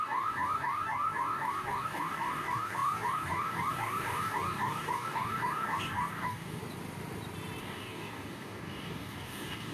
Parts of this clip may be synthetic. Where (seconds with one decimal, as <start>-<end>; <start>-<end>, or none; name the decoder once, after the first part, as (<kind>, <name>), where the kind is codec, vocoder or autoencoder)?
0.0-6.6 (codec, DAC); 7.6-9.7